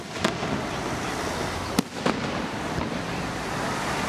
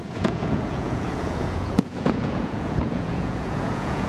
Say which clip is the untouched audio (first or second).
first